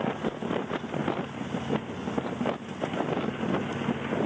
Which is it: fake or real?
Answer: real